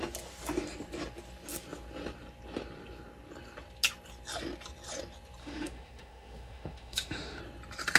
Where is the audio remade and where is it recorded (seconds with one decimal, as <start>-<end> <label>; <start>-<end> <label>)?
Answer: 0.0-5.4 recorded; 5.4-7.4 remade; 7.4-8.0 recorded